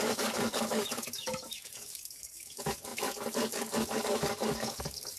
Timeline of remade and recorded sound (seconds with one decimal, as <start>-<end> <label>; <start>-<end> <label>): 0.0-5.2 remade